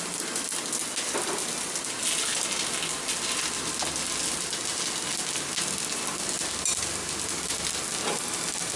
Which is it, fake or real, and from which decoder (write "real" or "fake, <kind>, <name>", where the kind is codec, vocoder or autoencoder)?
real